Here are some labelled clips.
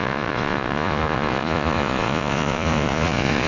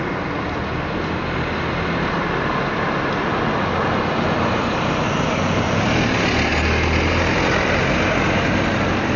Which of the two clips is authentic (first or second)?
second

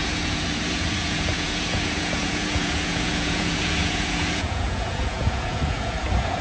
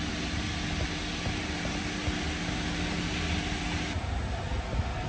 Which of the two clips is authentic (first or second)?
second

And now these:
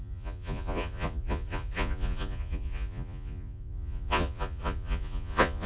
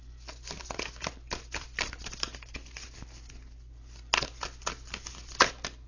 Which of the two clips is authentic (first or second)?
second